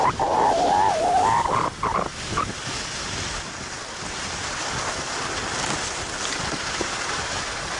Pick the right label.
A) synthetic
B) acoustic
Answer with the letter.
B